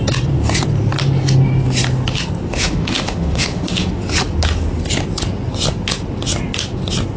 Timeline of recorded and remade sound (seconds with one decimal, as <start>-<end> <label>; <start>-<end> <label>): 0.0-2.5 recorded; 2.5-4.0 remade; 4.0-7.2 recorded